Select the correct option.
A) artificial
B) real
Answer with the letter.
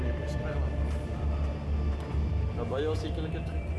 B